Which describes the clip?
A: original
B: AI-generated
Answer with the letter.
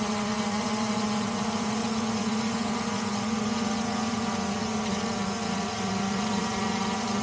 B